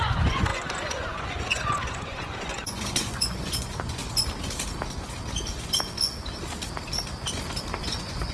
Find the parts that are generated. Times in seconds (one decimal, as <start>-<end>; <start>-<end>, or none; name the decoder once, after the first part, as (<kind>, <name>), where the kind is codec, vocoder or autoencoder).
0.0-4.0 (vocoder, Vocos); 7.8-8.3